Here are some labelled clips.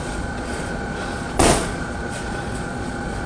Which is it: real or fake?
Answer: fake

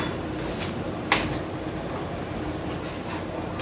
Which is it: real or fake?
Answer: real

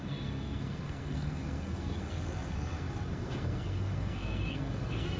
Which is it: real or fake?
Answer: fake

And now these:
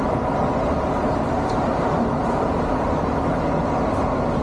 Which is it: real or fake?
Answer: real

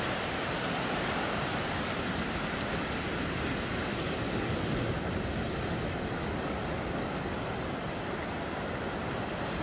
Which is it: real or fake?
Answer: real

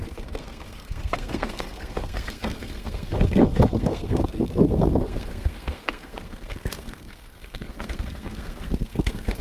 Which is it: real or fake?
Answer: fake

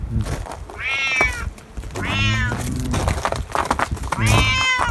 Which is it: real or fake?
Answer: real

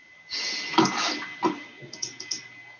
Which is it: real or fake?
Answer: real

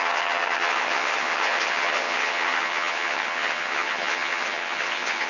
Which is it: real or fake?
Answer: fake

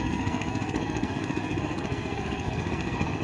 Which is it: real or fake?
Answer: fake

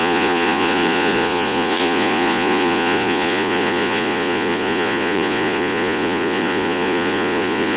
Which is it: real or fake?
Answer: fake